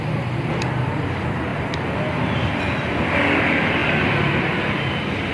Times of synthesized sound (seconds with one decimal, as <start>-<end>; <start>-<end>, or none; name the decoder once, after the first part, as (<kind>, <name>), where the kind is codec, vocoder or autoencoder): 1.5-3.0 (vocoder, BigVGAN v2); 3.8-5.3

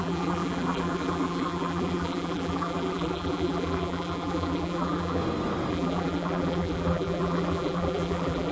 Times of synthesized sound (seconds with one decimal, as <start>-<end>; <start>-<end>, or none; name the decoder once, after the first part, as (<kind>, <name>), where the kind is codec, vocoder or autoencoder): 0.0-5.2 (vocoder, BigVGAN v2); 5.7-8.5